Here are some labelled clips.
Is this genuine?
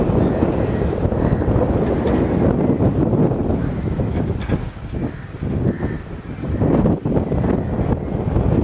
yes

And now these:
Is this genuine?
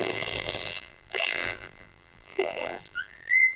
no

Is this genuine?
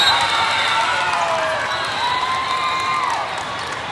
no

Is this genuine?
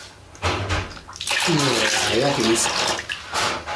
yes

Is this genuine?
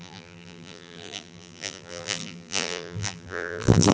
no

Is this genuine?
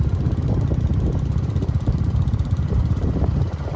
no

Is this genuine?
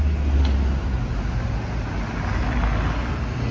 yes